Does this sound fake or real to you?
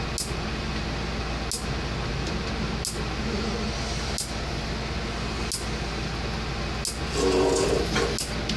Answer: real